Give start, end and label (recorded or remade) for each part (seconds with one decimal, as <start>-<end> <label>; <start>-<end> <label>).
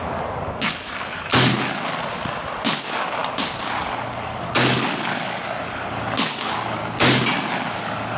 0.0-1.3 remade; 1.3-2.8 recorded; 2.8-3.2 remade; 3.2-3.8 recorded; 3.8-6.8 remade; 6.8-7.7 recorded; 7.7-8.2 remade